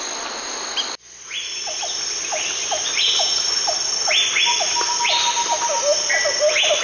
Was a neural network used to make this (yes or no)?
no